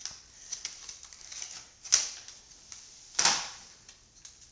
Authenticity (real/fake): real